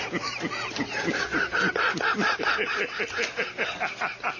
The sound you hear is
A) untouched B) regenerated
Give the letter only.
A